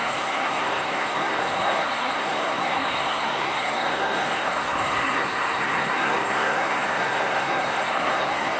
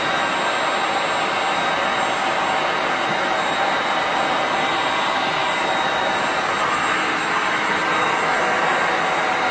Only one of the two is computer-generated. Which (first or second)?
first